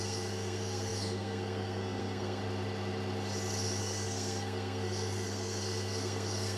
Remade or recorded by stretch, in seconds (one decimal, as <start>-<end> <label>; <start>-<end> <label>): 0.0-2.4 remade; 2.4-3.8 recorded; 3.8-6.6 remade